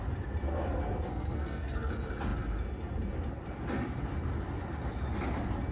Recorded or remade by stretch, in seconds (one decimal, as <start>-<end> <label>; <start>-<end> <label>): 0.0-1.1 recorded; 1.1-1.9 remade; 1.9-5.7 recorded

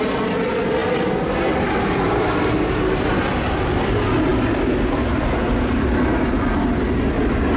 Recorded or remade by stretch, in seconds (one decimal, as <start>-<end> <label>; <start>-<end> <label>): 0.0-7.6 recorded

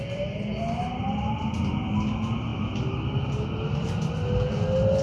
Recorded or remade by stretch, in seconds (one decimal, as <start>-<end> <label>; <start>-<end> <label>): 0.0-5.0 recorded

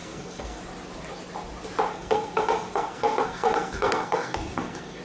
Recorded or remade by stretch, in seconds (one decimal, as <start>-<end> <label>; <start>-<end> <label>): 0.0-0.6 remade; 0.6-1.9 recorded; 1.9-5.0 remade